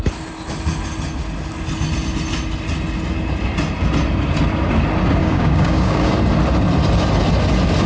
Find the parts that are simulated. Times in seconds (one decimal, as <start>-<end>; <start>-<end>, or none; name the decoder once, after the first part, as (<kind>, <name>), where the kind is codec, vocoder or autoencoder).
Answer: 5.2-6.1 (codec, DAC)